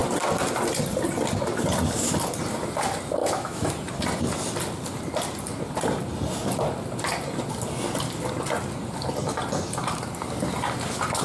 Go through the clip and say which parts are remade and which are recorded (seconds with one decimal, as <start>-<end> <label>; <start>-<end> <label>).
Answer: 0.0-3.2 recorded; 3.2-3.7 remade; 3.7-11.2 recorded